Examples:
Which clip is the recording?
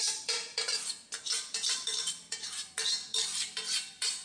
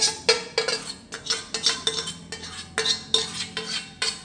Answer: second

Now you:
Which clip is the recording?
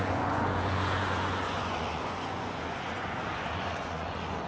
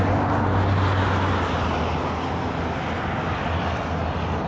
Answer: second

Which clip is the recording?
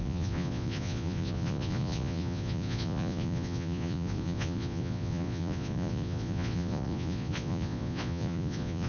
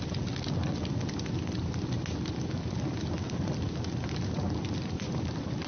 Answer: second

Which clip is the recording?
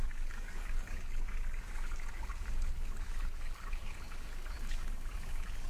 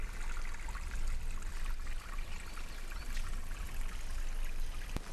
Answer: second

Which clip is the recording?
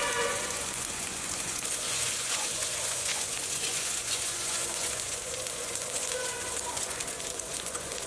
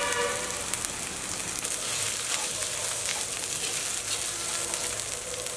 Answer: second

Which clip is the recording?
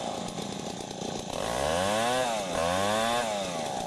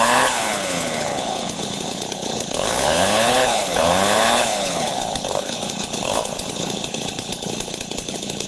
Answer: first